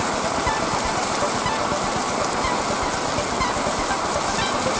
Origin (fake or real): real